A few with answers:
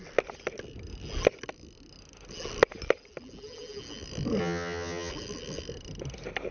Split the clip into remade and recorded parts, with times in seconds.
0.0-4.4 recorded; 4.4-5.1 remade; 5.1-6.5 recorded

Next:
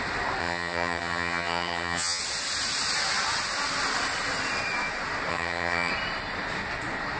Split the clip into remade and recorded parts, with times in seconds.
0.0-0.4 recorded; 0.4-2.2 remade; 2.2-5.3 recorded; 5.3-5.9 remade; 5.9-7.2 recorded

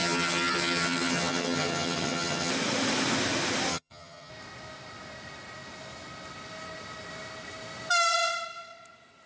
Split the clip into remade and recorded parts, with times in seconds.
0.0-2.5 remade; 2.5-3.7 recorded; 3.7-4.3 remade; 4.3-9.3 recorded

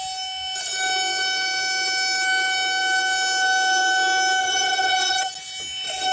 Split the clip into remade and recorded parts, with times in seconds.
0.0-4.4 recorded; 4.4-5.3 remade; 5.3-6.1 recorded

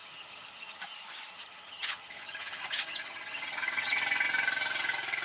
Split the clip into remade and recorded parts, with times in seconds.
0.0-0.8 remade; 0.8-1.3 recorded; 1.3-4.0 remade; 4.0-5.2 recorded

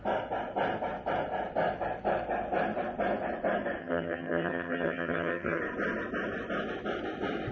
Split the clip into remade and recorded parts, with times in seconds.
0.0-3.8 recorded; 3.8-5.6 remade; 5.6-7.5 recorded

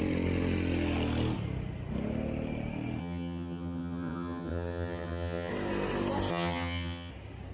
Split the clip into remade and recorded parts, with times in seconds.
0.0-3.0 recorded; 3.0-5.5 remade; 5.5-6.3 recorded; 6.3-7.1 remade; 7.1-7.5 recorded

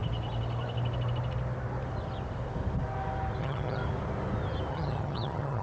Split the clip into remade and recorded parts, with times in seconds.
0.0-3.4 recorded; 3.4-3.8 remade; 3.8-4.7 recorded; 4.7-5.6 remade